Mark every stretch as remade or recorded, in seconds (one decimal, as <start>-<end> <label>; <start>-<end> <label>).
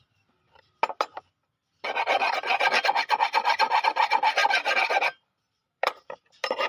0.0-5.6 recorded; 5.6-6.2 remade; 6.2-6.7 recorded